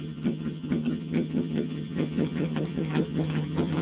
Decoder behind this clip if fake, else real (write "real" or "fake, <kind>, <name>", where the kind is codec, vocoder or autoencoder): fake, vocoder, HiFi-GAN